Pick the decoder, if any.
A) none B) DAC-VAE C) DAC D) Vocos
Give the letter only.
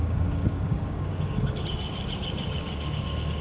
C